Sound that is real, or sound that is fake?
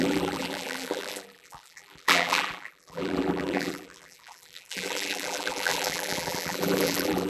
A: fake